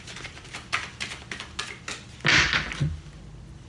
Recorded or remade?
recorded